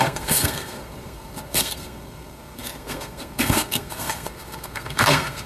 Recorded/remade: remade